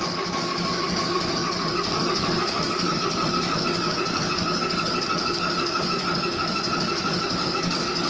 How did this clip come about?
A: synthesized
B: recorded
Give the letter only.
A